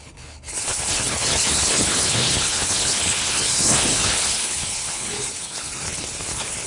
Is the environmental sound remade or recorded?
remade